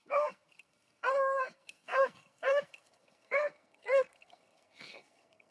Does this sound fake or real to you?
fake